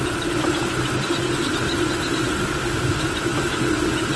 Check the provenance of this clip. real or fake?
real